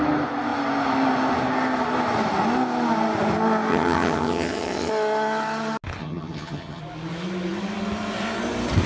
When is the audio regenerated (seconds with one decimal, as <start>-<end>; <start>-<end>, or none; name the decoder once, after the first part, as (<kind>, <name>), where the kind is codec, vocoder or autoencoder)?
3.7-4.9 (vocoder, HiFi-GAN); 6.0-6.8